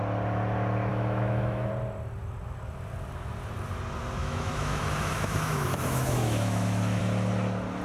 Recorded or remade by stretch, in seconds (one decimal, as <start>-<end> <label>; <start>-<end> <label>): 0.0-0.9 recorded; 0.9-1.7 remade; 1.7-4.2 recorded; 4.2-7.0 remade; 7.0-7.8 recorded